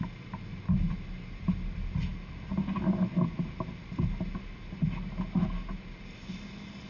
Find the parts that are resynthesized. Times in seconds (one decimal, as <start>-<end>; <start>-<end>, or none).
none